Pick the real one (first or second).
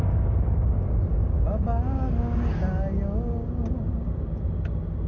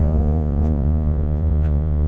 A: first